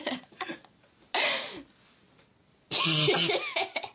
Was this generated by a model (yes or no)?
no